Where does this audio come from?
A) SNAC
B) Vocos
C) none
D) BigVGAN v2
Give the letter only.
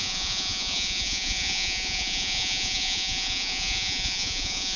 B